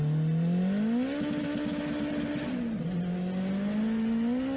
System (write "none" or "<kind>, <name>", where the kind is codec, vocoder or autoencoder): none